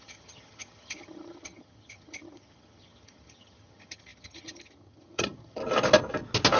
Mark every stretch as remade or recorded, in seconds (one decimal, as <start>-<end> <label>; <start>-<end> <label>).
0.0-5.6 remade; 5.6-6.6 recorded